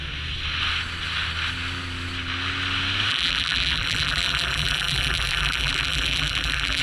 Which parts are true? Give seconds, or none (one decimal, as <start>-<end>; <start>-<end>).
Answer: 0.0-3.1